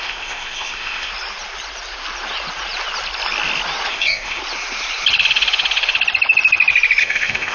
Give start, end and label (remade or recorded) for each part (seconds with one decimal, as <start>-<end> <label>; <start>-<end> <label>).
0.0-1.1 remade; 1.1-3.9 recorded; 3.9-4.4 remade; 4.4-7.0 recorded; 7.0-7.5 remade